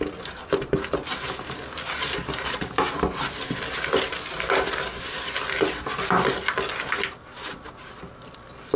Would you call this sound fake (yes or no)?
no